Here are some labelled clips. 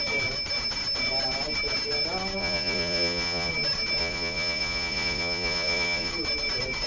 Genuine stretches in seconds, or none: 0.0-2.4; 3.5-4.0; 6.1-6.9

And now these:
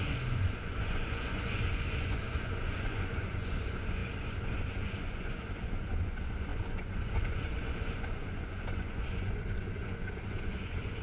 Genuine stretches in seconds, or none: none

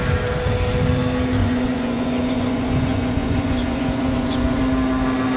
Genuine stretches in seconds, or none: 0.0-1.4; 4.6-5.4